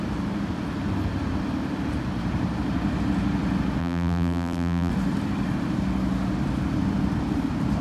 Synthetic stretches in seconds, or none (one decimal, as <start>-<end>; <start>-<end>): 3.8-4.9